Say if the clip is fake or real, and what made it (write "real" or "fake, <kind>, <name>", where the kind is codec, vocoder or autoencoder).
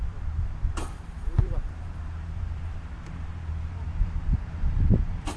fake, vocoder, BigVGAN v2